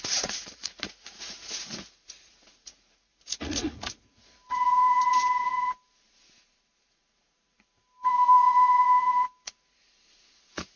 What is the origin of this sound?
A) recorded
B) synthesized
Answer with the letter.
B